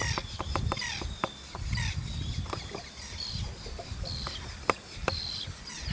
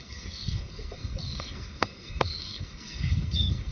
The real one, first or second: first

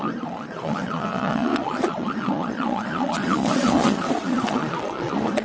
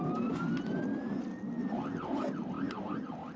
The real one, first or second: second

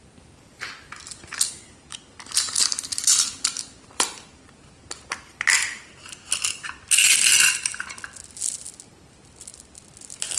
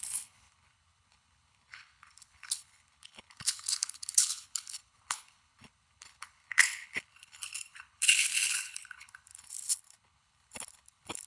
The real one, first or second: first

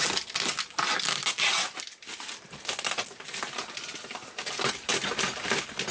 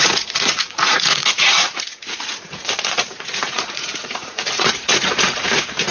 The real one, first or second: first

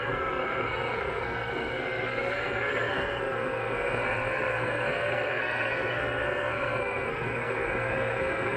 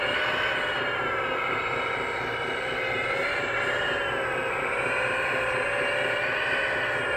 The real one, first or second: second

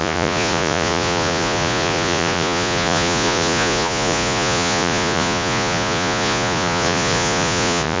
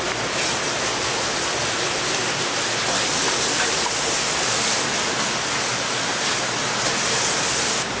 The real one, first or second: second